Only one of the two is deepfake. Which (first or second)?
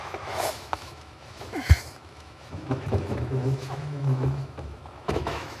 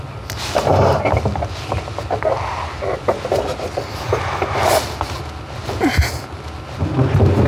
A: first